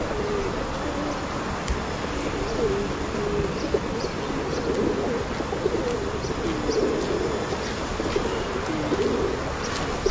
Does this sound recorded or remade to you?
recorded